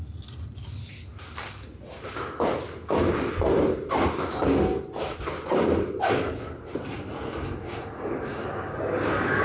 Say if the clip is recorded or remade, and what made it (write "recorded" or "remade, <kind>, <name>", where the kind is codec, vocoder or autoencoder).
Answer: recorded